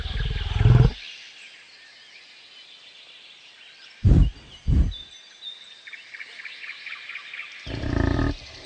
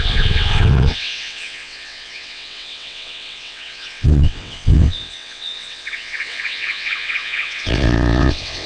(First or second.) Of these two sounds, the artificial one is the second